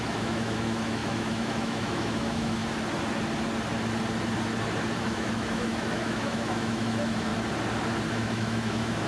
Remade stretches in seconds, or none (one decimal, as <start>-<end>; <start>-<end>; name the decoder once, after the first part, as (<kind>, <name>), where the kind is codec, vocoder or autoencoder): 0.0-2.6 (autoencoder, DAC-VAE); 5.0-7.3; 8.1-9.1